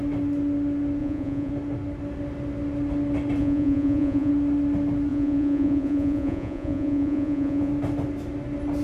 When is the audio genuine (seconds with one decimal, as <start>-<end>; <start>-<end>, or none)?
0.0-1.0; 1.5-3.4; 4.3-5.1; 7.7-8.8